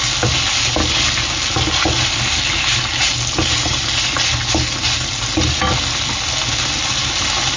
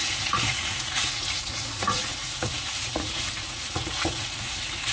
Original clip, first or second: first